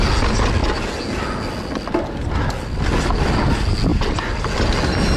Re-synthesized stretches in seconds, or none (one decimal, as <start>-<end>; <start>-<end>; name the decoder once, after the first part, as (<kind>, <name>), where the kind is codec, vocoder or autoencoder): none